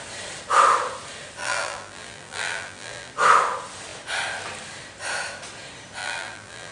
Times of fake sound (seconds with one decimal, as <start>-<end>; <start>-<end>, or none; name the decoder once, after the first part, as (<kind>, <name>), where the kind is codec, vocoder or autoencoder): 1.4-3.1 (vocoder, BigVGAN v2); 6.0-6.7